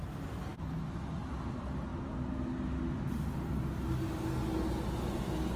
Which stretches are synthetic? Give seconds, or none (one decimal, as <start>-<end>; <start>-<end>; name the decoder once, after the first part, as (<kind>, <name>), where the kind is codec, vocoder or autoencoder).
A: 0.5-1.1 (autoencoder, DAC-VAE)